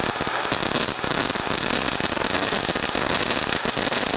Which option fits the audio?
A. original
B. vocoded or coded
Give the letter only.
A